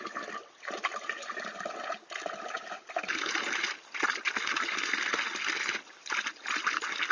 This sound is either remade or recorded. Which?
recorded